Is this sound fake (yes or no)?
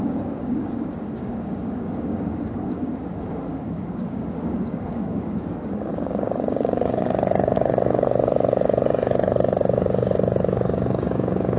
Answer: yes